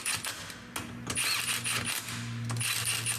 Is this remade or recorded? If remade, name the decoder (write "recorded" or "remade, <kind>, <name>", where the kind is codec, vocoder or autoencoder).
recorded